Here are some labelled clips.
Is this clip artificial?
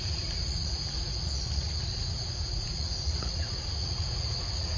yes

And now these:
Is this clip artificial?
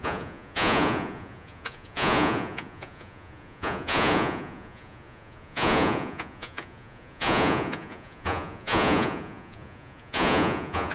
yes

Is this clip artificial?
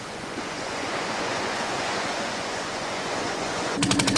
yes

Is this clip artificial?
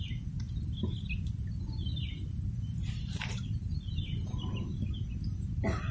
no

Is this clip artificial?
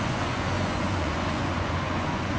yes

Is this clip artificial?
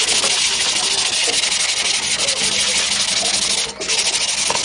no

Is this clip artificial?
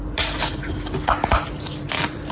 no